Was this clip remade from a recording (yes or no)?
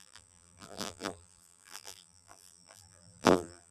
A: yes